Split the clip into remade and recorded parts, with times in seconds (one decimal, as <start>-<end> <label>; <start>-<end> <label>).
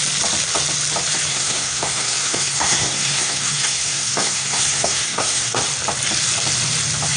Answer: 0.0-1.3 recorded; 1.3-5.6 remade; 5.6-7.2 recorded